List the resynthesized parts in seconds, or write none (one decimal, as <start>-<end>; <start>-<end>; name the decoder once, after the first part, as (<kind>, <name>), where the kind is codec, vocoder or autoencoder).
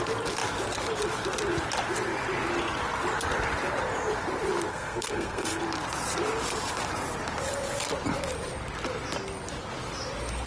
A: 4.7-5.6 (codec, SNAC)